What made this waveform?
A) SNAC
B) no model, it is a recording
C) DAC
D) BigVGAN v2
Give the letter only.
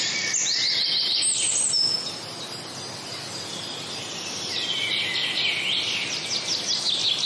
B